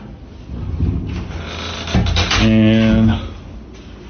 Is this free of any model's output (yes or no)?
yes